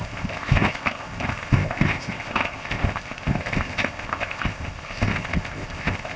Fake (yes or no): yes